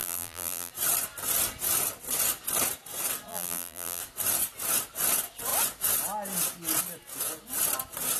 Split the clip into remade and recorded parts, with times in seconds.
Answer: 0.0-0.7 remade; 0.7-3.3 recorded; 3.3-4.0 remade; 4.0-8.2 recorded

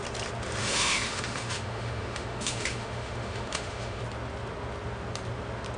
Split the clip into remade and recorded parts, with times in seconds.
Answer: 0.0-0.6 recorded; 0.6-4.0 remade; 4.0-5.8 recorded

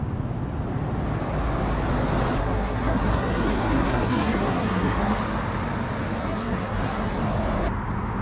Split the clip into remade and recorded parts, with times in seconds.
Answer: 0.0-2.4 recorded; 2.4-5.2 remade; 5.2-6.2 recorded; 6.2-7.2 remade; 7.2-8.2 recorded

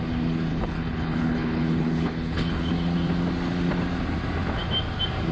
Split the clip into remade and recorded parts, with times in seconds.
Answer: 0.0-0.5 recorded; 0.5-2.7 remade; 2.7-5.3 recorded

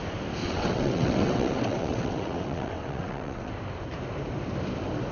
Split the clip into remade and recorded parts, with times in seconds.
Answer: 0.0-0.4 recorded; 0.4-3.5 remade; 3.5-5.1 recorded